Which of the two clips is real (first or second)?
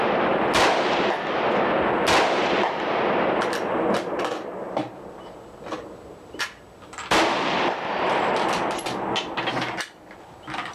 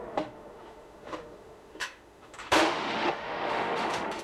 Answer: first